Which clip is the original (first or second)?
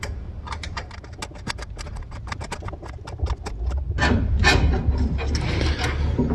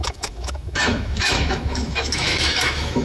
first